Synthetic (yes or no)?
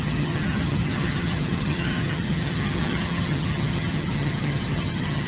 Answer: yes